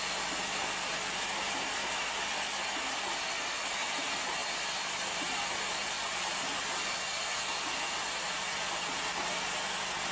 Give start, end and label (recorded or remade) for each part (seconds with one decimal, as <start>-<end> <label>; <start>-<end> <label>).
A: 0.0-10.1 recorded